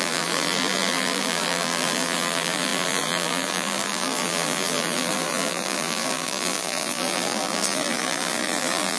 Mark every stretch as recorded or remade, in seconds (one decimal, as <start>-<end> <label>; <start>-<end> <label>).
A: 0.0-9.0 remade